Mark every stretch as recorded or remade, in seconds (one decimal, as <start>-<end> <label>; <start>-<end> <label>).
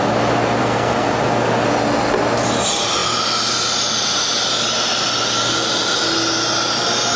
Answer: 0.0-0.6 recorded; 0.6-1.1 remade; 1.1-7.2 recorded